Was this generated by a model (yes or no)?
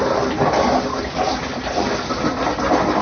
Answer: no